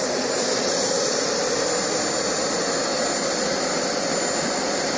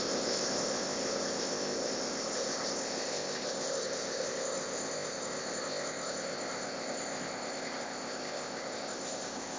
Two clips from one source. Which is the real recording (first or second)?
first